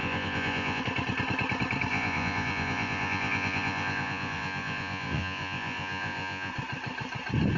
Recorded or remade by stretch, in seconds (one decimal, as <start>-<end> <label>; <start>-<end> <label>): 0.0-0.8 remade; 0.8-1.9 recorded; 1.9-6.5 remade; 6.5-7.6 recorded